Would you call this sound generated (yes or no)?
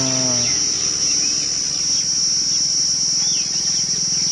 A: no